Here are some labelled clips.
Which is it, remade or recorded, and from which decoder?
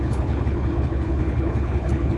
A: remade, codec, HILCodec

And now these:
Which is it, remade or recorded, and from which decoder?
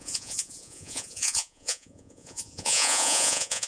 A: remade, vocoder, Vocos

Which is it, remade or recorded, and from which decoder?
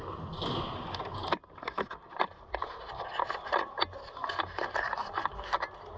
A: recorded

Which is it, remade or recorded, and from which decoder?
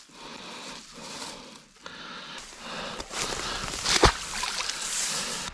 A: recorded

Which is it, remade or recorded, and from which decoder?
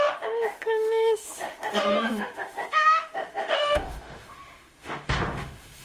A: remade, autoencoder, DAC-VAE